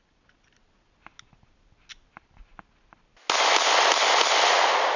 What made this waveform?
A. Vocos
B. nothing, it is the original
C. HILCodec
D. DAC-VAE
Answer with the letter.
B